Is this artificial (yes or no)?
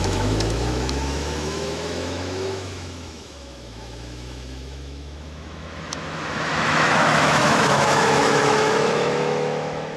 yes